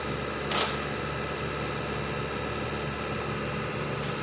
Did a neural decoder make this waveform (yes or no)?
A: no